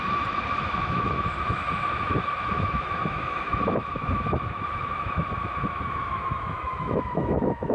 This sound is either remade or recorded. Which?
remade